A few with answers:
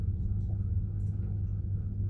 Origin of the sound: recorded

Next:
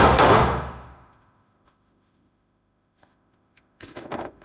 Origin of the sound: remade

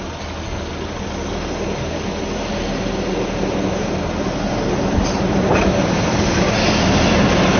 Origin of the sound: recorded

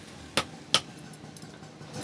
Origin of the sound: recorded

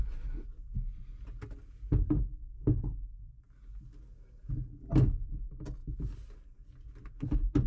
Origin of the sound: recorded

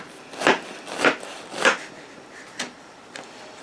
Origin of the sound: recorded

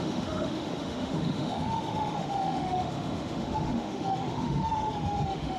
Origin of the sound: remade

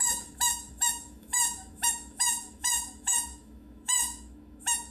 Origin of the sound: remade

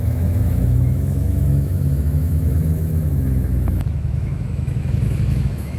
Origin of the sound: remade